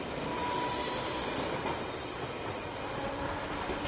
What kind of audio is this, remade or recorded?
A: recorded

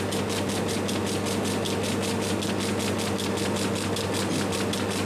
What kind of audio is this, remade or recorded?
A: recorded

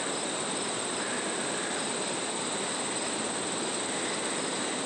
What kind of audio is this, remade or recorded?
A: recorded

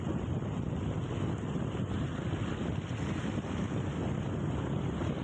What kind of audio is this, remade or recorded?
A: recorded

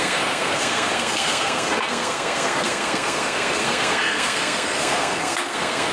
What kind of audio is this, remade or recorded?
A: remade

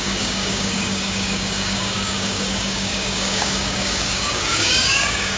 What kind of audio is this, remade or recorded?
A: remade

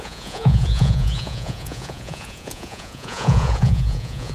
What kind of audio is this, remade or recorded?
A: remade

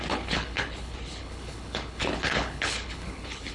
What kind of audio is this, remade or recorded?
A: remade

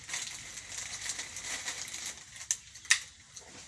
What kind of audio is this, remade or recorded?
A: recorded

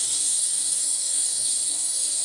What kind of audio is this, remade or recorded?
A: remade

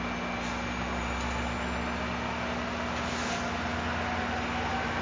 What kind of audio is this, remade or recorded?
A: recorded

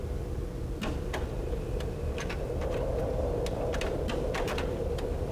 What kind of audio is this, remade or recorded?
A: recorded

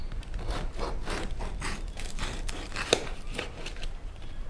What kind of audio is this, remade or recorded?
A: remade